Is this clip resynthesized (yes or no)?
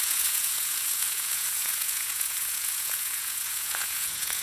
yes